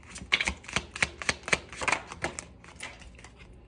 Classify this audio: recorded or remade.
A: recorded